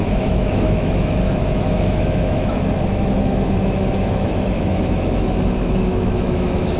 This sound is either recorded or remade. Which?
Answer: remade